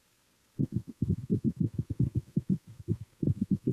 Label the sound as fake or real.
fake